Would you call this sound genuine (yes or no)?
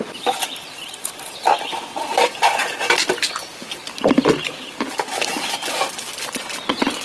yes